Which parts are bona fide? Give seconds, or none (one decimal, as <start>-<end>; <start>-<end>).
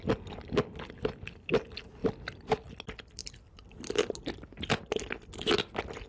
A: 0.0-6.1